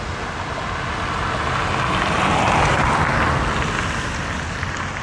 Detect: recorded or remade recorded